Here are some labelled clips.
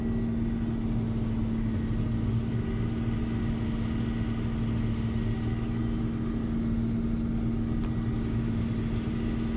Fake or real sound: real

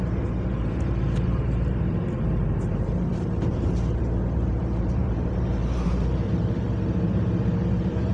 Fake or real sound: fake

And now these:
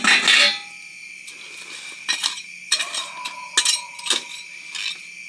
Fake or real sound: real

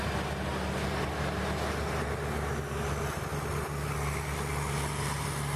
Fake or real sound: real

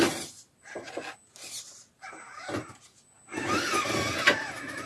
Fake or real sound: real